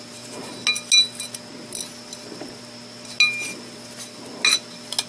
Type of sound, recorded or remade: recorded